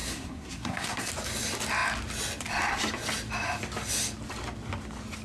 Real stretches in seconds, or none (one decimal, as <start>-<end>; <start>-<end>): 1.1-5.2